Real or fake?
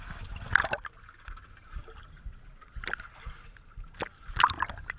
real